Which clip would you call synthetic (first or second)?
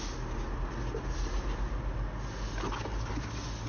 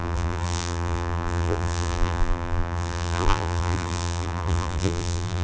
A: second